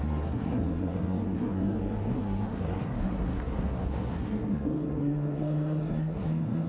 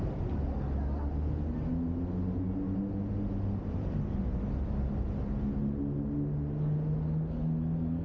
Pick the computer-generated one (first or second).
first